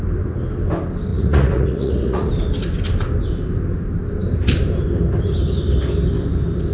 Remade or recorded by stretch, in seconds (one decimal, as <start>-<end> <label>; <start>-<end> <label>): 0.0-1.1 recorded; 1.1-2.3 remade; 2.3-6.7 recorded